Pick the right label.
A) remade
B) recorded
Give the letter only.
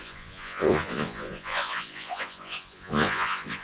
A